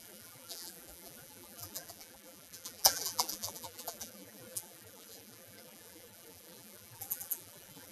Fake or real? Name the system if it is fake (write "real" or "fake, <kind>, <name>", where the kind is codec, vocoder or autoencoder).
fake, vocoder, BigVGAN v2